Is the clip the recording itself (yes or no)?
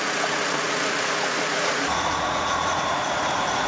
no